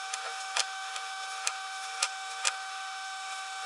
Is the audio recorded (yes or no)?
no